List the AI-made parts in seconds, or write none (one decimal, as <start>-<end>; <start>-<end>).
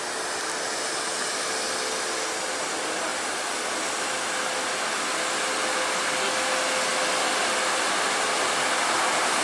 none